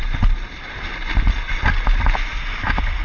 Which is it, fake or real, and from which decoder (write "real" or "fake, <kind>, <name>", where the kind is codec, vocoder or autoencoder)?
real